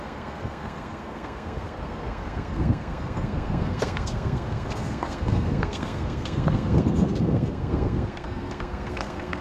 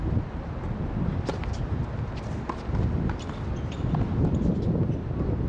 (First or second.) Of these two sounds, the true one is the second